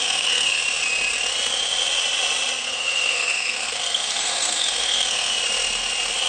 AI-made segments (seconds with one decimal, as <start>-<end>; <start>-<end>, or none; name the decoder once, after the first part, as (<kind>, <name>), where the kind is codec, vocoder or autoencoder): 0.0-0.6 (codec, SNAC); 2.6-5.3